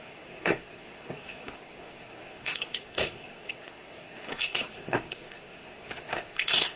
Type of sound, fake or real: fake